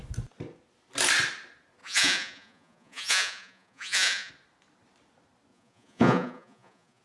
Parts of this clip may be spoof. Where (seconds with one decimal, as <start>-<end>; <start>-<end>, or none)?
1.8-4.3; 5.5-7.0